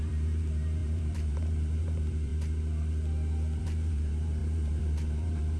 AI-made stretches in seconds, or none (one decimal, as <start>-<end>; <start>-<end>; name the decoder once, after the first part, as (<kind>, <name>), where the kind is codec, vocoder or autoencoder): 0.0-2.3 (vocoder, BigVGAN v2); 3.6-5.6